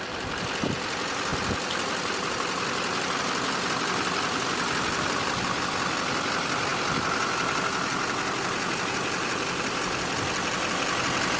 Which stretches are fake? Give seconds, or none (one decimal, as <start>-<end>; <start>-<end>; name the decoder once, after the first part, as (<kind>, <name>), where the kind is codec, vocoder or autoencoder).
none